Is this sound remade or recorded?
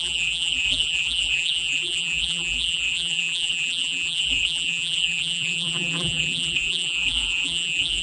remade